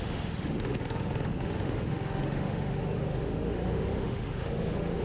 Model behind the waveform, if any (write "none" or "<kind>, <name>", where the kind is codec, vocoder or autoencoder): autoencoder, DAC-VAE